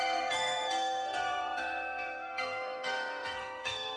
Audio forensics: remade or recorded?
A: remade